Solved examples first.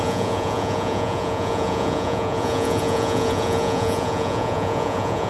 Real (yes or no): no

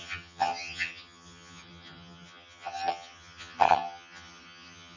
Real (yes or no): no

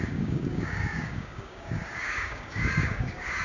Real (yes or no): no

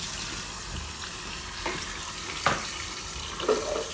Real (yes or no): yes